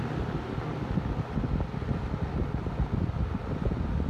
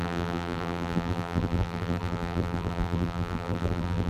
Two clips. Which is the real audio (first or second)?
first